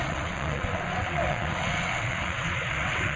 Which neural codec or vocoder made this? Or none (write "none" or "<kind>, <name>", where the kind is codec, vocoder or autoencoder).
vocoder, WaveNeXt